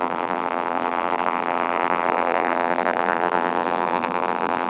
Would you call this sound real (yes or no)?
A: no